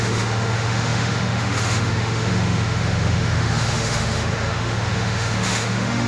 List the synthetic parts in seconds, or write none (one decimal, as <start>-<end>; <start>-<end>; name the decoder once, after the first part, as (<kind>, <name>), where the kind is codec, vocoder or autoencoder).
0.0-6.1 (autoencoder, DAC-VAE)